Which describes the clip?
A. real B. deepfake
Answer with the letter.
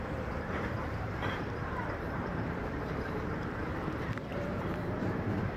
B